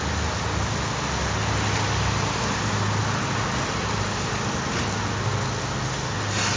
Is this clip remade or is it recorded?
recorded